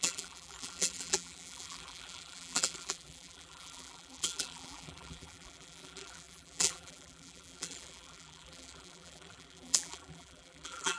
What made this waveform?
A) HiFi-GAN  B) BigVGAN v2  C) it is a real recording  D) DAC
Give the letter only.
B